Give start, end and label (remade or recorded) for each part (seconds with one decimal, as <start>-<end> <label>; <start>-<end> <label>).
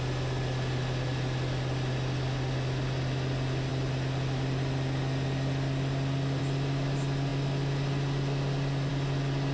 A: 0.0-9.5 recorded